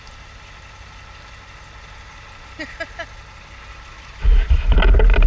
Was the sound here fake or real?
real